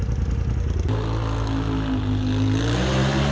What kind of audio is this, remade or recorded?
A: recorded